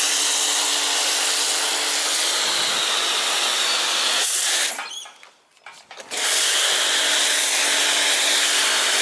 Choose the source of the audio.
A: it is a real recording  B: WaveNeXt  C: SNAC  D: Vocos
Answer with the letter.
A